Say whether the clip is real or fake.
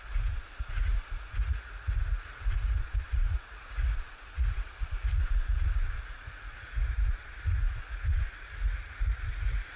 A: fake